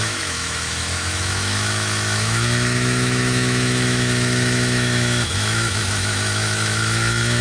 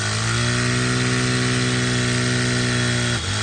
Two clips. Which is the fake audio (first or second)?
first